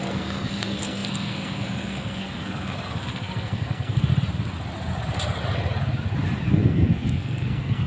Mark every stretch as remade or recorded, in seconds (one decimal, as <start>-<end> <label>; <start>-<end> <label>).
0.0-4.1 remade; 4.1-6.5 recorded; 6.5-7.9 remade